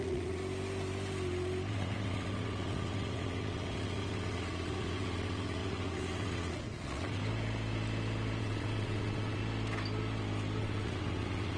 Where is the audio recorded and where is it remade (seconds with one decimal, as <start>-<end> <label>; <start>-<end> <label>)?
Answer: 0.0-0.4 remade; 0.4-1.7 recorded; 1.7-7.2 remade; 7.2-8.4 recorded; 8.4-9.4 remade; 9.4-10.6 recorded; 10.6-11.6 remade